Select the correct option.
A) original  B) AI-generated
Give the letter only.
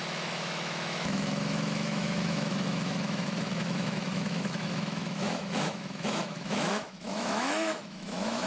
B